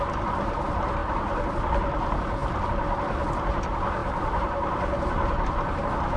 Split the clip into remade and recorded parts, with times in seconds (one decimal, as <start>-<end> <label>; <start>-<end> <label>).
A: 0.0-4.0 recorded; 4.0-5.8 remade; 5.8-6.2 recorded